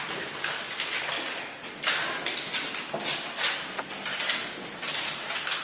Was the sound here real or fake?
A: real